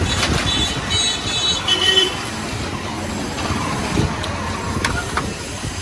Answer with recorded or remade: recorded